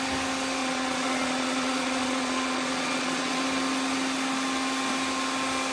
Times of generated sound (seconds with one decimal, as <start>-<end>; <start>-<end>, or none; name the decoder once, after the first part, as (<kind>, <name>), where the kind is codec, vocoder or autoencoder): 0.6-3.4 (vocoder, Vocos)